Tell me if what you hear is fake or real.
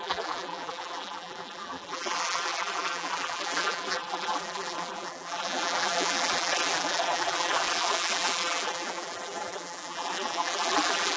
fake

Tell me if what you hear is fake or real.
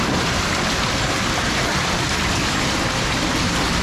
fake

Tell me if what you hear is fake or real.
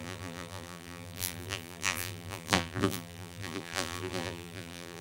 fake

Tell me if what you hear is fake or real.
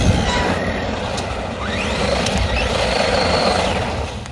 real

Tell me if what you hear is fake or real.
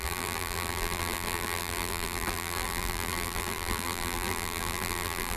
fake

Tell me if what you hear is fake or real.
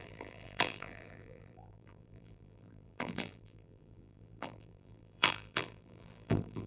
fake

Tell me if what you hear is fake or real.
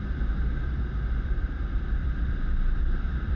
fake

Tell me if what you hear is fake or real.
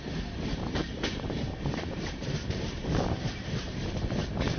fake